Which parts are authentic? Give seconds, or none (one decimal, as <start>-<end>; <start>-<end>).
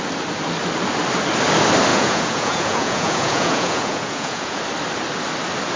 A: 0.0-1.9; 4.6-5.8